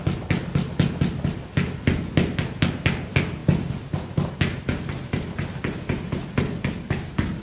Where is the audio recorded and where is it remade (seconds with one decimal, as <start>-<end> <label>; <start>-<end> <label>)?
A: 0.0-7.4 recorded